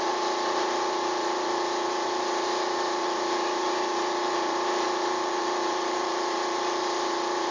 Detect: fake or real fake